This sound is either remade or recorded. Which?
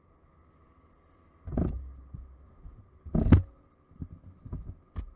recorded